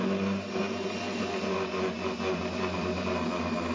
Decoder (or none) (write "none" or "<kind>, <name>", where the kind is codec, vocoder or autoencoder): none